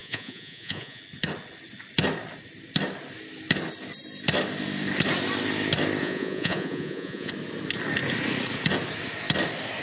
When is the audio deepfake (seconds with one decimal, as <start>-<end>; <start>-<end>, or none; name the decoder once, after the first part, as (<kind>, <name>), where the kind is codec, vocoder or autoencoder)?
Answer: 0.0-1.0 (vocoder, Vocos); 6.0-7.3